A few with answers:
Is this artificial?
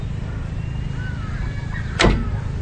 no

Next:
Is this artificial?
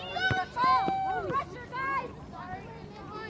no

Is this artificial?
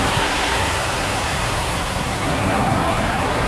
yes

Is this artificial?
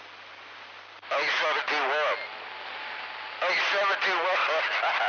no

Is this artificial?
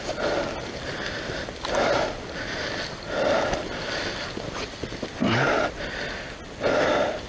no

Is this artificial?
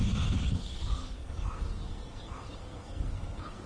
yes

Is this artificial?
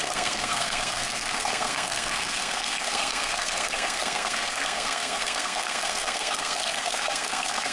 yes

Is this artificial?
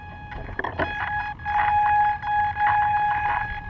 no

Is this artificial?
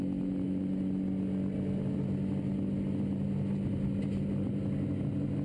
no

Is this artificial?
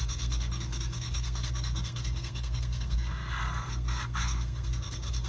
yes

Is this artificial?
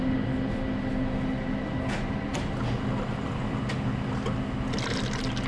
no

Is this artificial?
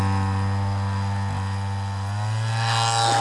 no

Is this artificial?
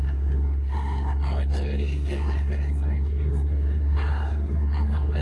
yes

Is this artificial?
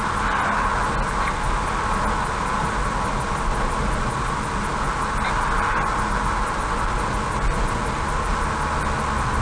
no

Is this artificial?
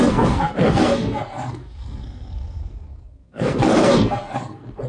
yes